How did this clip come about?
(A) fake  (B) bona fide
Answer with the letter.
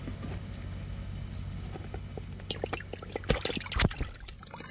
B